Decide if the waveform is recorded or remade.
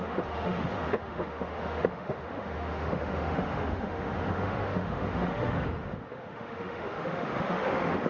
remade